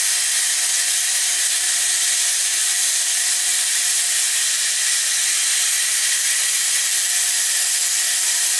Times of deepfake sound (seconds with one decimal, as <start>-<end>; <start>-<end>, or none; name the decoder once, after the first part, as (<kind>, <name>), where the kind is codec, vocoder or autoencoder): none